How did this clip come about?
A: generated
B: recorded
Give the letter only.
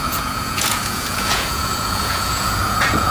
A